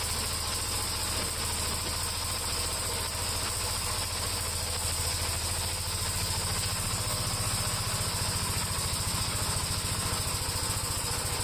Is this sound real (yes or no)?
yes